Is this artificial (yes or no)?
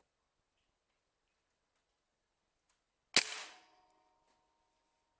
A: no